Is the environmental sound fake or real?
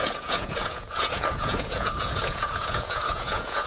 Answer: fake